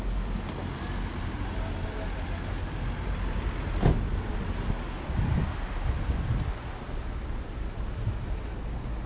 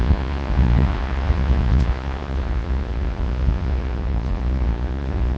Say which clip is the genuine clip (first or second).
first